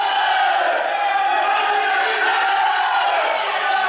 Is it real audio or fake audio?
real